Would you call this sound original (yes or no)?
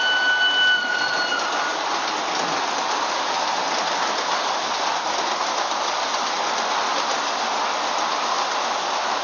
yes